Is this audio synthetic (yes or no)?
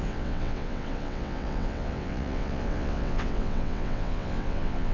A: yes